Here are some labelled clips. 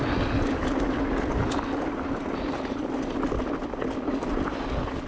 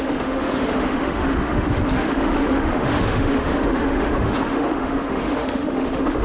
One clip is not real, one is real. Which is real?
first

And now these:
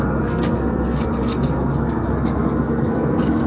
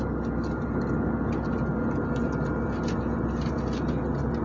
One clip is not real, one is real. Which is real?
second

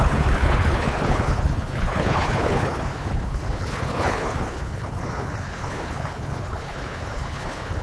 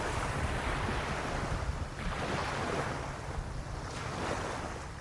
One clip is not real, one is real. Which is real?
second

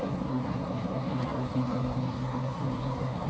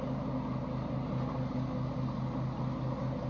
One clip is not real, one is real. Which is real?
second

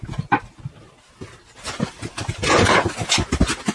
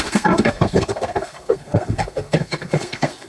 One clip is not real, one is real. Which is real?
first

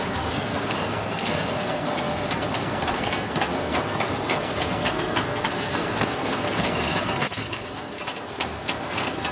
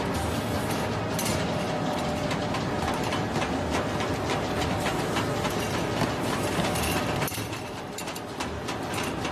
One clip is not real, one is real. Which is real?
second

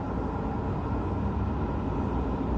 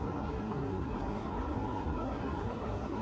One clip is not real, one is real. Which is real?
first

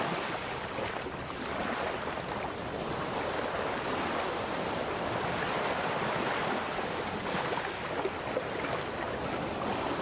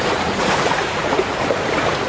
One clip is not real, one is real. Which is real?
first